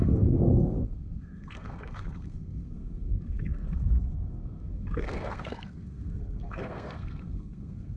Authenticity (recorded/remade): remade